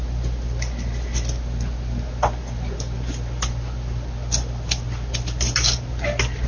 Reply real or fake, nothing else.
real